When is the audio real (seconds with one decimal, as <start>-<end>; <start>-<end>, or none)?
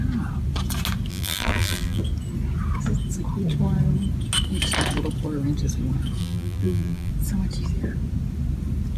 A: 0.0-1.1; 2.0-6.2; 7.1-9.0